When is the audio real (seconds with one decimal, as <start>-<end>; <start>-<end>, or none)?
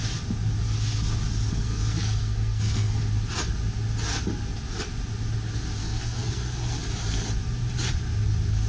0.0-1.5; 3.0-5.8; 6.8-8.7